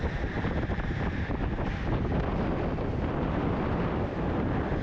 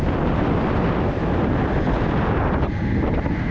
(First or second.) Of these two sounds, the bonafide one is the second